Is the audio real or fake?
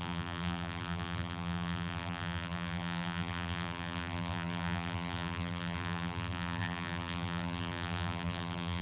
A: fake